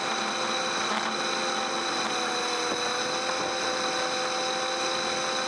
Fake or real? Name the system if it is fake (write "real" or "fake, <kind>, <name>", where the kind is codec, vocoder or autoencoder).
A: real